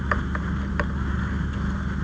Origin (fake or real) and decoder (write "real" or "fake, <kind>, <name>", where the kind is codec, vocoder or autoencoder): real